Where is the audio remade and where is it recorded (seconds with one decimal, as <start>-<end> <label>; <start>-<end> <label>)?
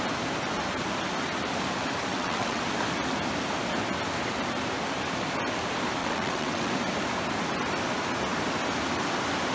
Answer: 0.0-2.1 recorded; 2.1-2.6 remade; 2.6-6.0 recorded; 6.0-6.7 remade; 6.7-9.5 recorded